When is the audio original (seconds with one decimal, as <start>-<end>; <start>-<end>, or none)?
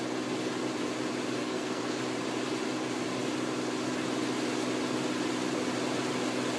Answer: 0.0-1.4; 2.0-6.6